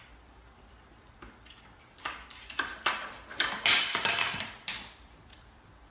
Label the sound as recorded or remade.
remade